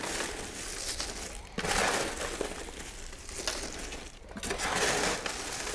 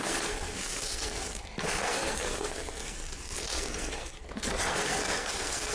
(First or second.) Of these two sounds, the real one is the first